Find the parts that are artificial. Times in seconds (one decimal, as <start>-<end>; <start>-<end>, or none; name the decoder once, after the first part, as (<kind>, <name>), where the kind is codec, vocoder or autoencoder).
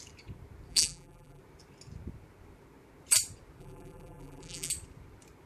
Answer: 0.7-1.4 (vocoder, BigVGAN v2); 3.6-4.7